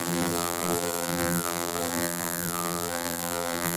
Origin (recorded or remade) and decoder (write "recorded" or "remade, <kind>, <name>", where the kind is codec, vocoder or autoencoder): remade, vocoder, BigVGAN v2